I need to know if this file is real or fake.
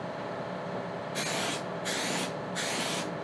real